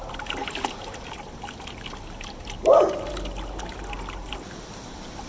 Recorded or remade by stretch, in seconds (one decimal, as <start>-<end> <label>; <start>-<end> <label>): 0.0-5.3 recorded